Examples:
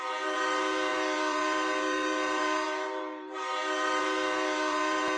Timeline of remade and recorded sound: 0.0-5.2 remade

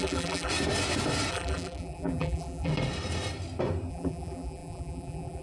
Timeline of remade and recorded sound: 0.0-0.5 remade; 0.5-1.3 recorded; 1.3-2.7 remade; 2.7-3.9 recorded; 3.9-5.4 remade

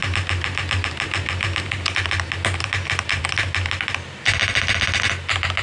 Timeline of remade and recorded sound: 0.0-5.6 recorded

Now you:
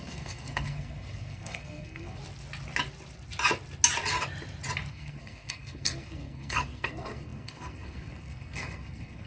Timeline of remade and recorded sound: 0.0-2.2 remade; 2.2-4.9 recorded; 4.9-9.3 remade

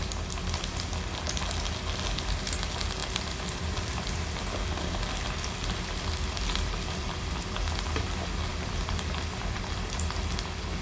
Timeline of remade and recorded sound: 0.0-3.0 recorded; 3.0-7.4 remade; 7.4-8.5 recorded; 8.5-9.6 remade; 9.6-10.8 recorded